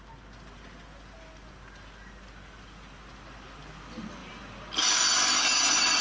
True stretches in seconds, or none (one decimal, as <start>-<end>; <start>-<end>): 0.0-6.0